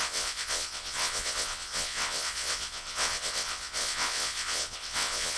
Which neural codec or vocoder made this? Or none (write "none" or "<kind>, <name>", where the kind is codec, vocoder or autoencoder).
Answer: vocoder, WaveNeXt